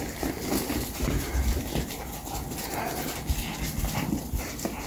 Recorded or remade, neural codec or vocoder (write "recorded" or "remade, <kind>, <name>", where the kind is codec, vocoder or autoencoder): recorded